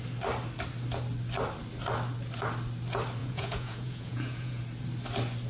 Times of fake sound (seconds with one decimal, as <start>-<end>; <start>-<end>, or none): 3.2-4.6